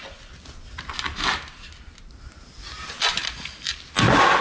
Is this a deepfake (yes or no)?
no